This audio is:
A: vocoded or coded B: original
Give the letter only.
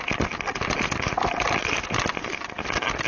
B